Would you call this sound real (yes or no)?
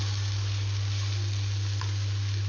yes